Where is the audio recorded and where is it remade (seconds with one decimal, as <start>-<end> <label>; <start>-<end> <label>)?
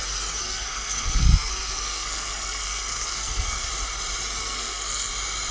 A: 0.0-0.4 recorded; 0.4-3.7 remade; 3.7-4.4 recorded; 4.4-5.1 remade; 5.1-5.5 recorded